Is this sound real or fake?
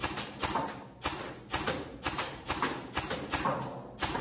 real